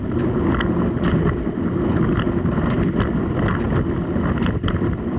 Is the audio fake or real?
real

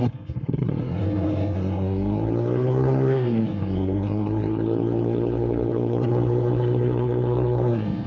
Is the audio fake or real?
fake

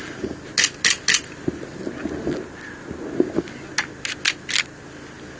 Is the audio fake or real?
real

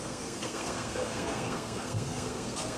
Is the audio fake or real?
fake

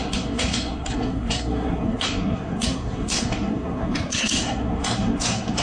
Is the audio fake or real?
fake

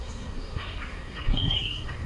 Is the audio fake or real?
fake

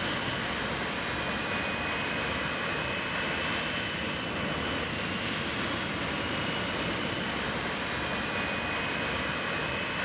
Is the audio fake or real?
real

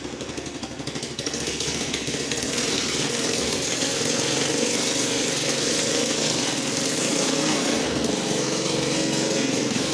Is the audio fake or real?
fake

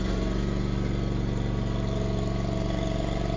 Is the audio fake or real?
real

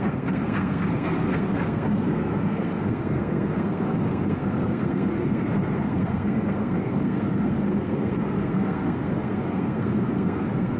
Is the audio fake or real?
fake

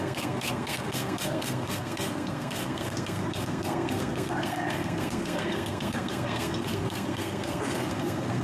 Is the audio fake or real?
fake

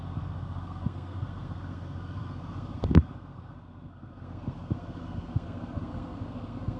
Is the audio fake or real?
fake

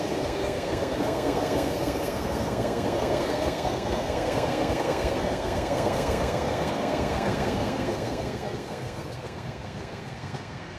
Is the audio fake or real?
fake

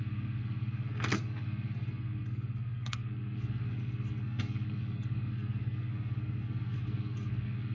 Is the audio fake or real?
fake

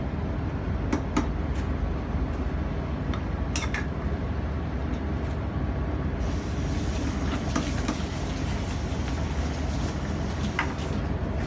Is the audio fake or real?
real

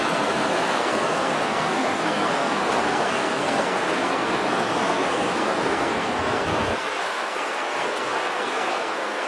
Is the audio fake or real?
fake